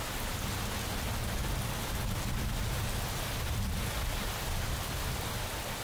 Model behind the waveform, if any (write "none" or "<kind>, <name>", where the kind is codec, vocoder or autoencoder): none